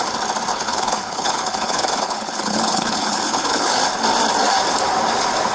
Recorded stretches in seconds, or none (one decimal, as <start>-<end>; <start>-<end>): 0.0-0.5; 3.8-5.5

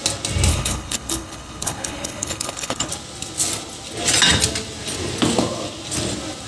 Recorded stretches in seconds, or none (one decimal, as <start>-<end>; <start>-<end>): 0.0-0.5; 2.9-6.5

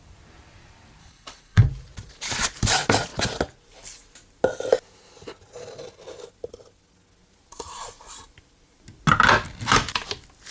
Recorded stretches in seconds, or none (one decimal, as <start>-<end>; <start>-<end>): 0.0-1.0; 1.6-10.5

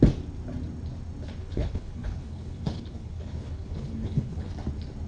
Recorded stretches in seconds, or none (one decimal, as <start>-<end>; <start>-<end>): 0.0-1.4; 4.5-5.1

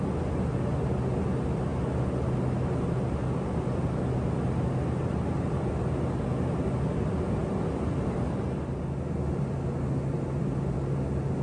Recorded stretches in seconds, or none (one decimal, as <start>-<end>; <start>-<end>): 0.0-11.4

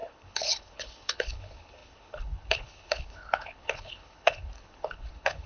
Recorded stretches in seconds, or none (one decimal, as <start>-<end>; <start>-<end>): none